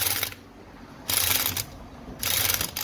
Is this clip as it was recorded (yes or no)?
yes